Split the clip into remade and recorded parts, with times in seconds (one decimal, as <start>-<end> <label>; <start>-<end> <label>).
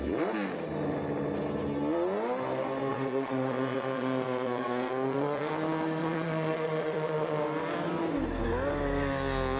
0.0-2.9 recorded; 2.9-5.5 remade; 5.5-6.0 recorded; 6.0-7.4 remade; 7.4-9.6 recorded